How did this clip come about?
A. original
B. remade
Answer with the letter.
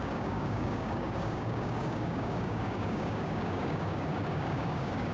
B